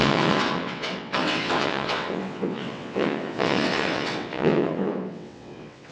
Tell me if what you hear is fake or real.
fake